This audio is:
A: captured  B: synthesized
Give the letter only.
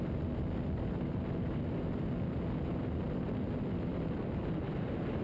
A